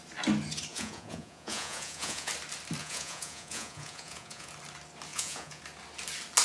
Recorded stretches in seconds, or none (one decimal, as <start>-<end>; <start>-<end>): 0.0-0.7; 2.3-2.8; 4.5-5.1; 5.6-6.4